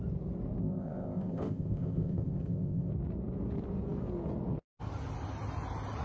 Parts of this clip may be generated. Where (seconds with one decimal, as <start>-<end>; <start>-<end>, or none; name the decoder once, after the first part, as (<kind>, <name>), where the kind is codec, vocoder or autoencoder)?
0.6-2.9 (codec, ZipCodec)